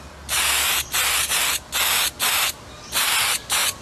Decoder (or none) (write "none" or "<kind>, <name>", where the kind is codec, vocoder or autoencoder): none